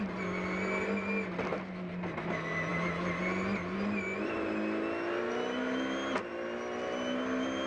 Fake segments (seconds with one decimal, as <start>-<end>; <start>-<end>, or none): none